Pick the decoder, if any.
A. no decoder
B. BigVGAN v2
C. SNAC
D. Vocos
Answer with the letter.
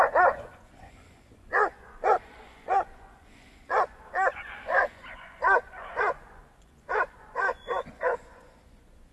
D